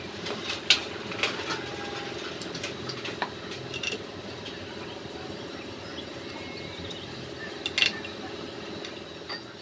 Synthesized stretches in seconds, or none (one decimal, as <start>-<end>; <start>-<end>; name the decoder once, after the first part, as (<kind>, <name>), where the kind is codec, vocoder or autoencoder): none